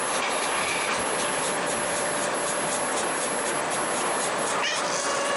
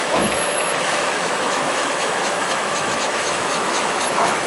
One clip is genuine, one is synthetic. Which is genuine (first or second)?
first